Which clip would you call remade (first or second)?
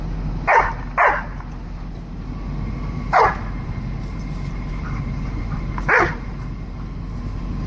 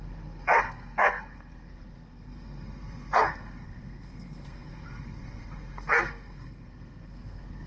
second